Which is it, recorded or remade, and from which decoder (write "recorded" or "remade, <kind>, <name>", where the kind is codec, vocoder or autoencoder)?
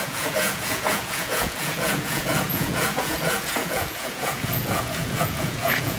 remade, vocoder, Vocos